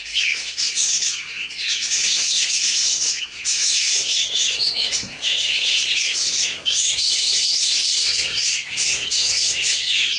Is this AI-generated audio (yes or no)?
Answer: yes